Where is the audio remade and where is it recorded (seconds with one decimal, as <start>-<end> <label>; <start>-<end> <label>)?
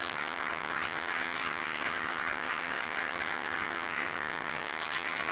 0.0-5.3 remade